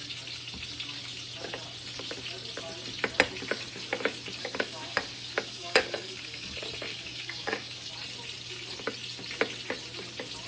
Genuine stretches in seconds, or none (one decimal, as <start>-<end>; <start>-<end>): 0.0-4.4; 6.5-6.9; 7.9-10.5